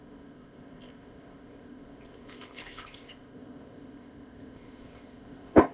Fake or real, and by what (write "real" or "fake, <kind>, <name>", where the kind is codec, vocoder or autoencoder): fake, codec, ZipCodec